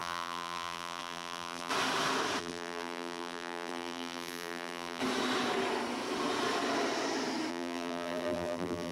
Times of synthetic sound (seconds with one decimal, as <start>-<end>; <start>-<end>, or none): 0.0-1.7; 2.4-5.0; 7.5-8.9